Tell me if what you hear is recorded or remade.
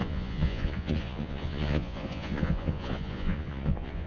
remade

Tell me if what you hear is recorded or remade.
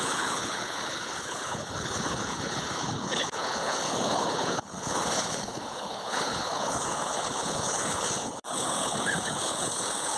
remade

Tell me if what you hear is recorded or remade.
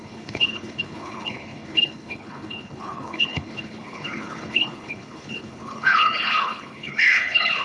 remade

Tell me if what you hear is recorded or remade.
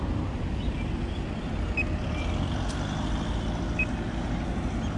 recorded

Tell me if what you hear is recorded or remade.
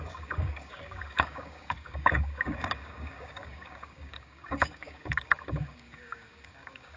remade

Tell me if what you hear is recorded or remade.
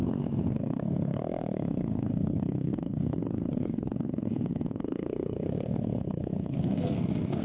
remade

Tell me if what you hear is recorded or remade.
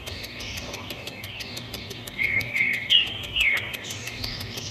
remade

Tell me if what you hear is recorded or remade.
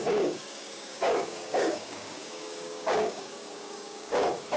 remade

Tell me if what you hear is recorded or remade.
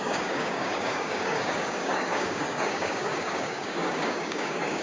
remade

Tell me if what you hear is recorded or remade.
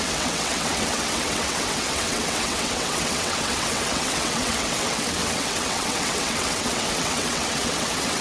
remade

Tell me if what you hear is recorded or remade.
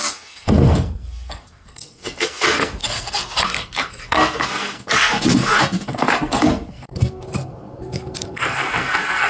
remade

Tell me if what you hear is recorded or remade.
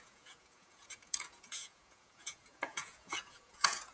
remade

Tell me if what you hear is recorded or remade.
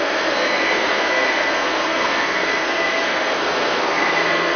remade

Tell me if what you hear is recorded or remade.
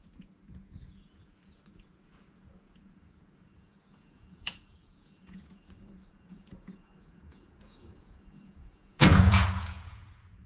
remade